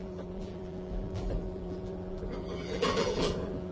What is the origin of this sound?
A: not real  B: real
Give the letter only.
A